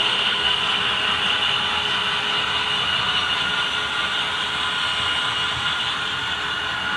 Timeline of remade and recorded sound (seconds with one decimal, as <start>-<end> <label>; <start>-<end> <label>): 0.0-0.6 remade; 0.6-7.0 recorded

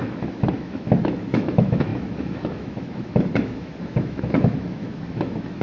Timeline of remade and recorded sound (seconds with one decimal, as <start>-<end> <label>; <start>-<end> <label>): 0.0-5.6 remade

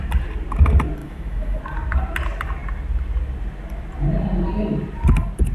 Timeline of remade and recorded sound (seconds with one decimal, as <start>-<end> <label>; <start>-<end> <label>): 0.0-1.0 recorded; 1.0-1.6 remade; 1.6-5.5 recorded

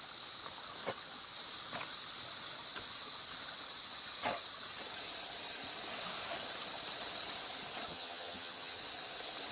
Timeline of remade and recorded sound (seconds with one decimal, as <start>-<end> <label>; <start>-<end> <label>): 0.0-7.9 recorded; 7.9-8.8 remade; 8.8-9.5 recorded

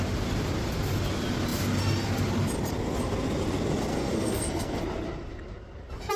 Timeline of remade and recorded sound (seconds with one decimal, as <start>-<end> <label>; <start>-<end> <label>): 0.0-3.9 recorded; 3.9-4.8 remade; 4.8-6.2 recorded